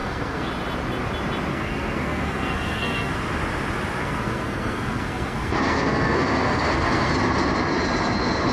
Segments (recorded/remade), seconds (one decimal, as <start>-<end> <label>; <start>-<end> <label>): 0.0-0.5 remade; 0.5-1.5 recorded; 1.5-3.2 remade; 3.2-4.0 recorded; 4.0-7.1 remade; 7.1-8.5 recorded